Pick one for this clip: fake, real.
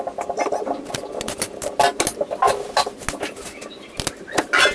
real